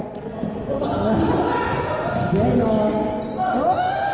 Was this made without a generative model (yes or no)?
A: yes